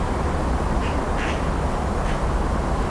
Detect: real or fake real